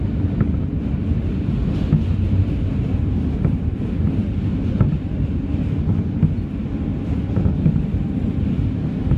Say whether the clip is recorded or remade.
recorded